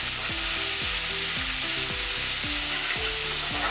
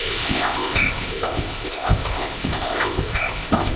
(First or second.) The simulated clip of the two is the second